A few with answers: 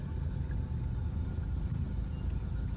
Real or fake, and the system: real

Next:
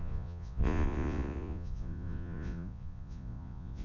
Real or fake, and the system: fake, vocoder, Vocos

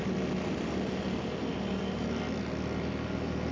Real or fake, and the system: real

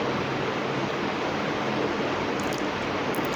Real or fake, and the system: real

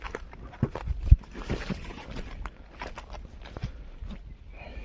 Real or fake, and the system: real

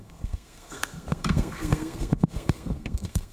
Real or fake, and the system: fake, codec, SNAC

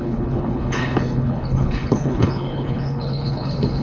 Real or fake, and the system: fake, codec, HILCodec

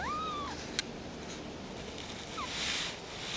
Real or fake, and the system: real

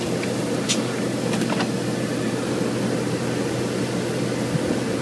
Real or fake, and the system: real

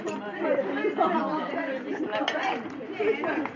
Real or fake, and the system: real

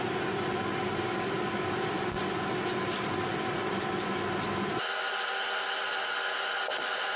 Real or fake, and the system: real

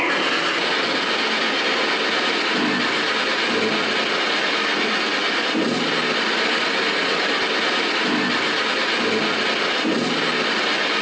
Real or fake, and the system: real